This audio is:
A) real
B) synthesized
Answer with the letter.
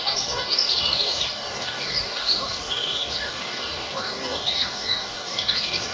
B